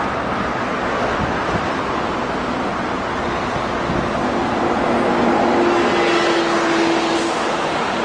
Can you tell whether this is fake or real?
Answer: real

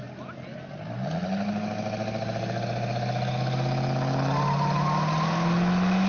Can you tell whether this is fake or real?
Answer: real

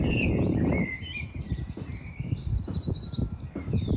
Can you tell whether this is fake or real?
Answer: fake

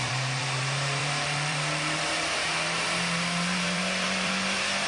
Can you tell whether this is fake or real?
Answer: fake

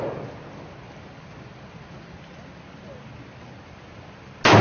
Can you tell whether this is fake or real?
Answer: real